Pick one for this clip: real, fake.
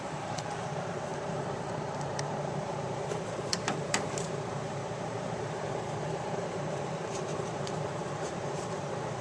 fake